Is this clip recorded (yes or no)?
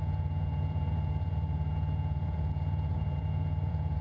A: no